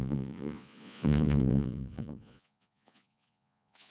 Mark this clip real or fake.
fake